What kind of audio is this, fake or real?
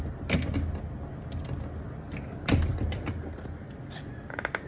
real